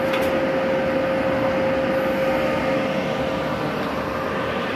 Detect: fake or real real